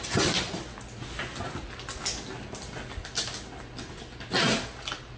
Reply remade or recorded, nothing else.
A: recorded